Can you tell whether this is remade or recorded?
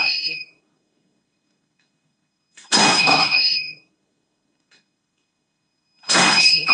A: remade